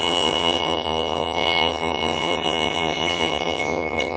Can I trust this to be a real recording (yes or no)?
no